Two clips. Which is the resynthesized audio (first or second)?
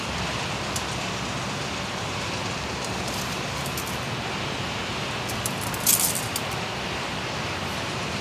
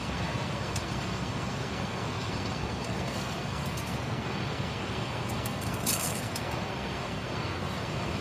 second